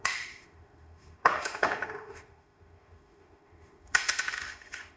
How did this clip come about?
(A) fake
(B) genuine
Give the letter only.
A